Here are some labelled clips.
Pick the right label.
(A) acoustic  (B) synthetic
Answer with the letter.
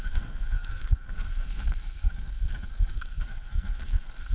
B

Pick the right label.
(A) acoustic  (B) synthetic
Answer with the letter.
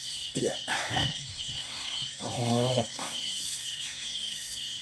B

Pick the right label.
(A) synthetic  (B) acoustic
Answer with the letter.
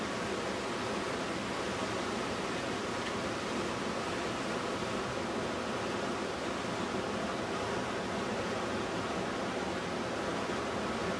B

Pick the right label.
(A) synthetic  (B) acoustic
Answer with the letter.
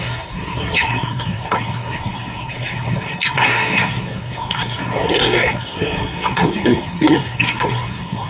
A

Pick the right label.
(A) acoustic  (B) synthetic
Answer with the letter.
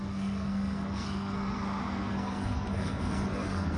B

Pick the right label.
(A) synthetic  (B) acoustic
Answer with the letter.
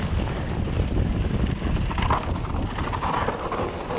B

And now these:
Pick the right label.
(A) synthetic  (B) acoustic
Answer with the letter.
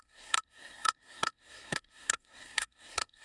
A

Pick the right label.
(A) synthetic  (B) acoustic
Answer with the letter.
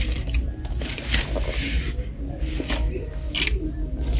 B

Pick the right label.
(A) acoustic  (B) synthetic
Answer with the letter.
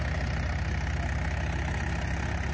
A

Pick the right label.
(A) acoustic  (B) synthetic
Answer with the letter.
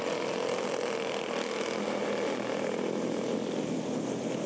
A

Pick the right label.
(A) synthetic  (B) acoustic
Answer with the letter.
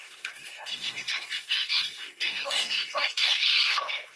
A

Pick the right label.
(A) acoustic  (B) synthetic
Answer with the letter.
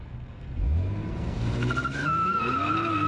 B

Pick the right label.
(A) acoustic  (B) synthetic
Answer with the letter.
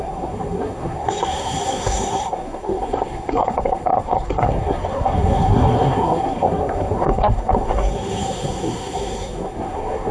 B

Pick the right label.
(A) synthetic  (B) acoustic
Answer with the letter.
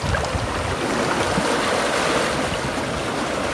B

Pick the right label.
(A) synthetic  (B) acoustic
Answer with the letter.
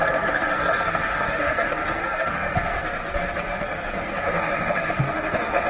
A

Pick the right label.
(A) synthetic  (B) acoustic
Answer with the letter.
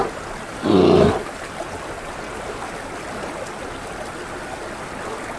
B